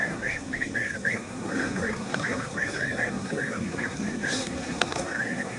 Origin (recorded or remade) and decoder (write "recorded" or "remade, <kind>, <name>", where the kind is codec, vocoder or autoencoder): remade, codec, SNAC